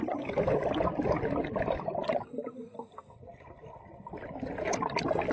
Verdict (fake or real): real